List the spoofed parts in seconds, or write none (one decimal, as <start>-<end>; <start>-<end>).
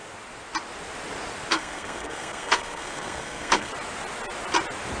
1.5-3.7